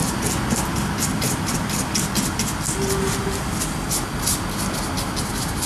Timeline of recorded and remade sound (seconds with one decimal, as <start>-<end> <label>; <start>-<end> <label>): 0.0-5.7 recorded